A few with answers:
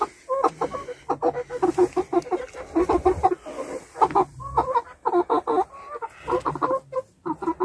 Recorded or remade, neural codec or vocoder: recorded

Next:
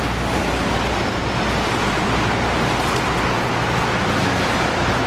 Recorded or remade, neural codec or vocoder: recorded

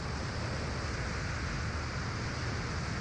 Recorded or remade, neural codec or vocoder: recorded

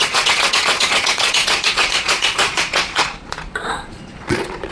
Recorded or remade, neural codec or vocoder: remade, vocoder, Vocos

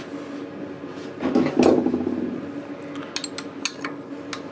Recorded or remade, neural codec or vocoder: recorded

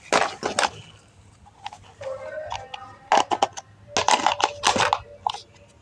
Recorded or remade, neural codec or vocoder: recorded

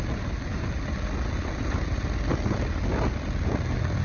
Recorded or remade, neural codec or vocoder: recorded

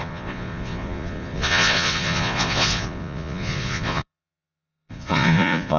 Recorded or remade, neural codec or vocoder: remade, vocoder, Vocos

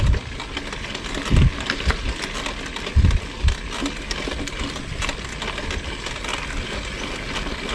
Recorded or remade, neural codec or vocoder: recorded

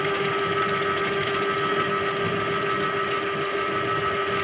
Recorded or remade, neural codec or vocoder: recorded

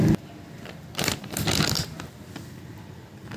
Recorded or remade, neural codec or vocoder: recorded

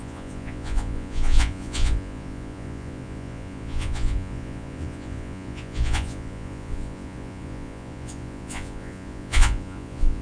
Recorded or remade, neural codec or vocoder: remade, vocoder, Vocos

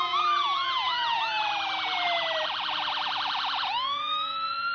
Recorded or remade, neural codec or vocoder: remade, vocoder, Vocos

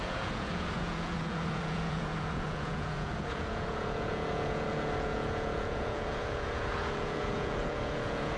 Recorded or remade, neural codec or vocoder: remade, vocoder, Vocos